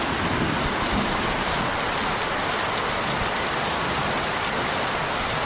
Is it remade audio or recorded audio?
recorded